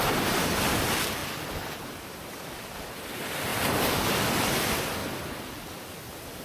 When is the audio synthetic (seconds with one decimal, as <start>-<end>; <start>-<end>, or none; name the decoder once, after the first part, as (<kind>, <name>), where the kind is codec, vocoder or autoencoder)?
none